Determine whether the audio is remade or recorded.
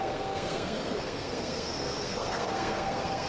remade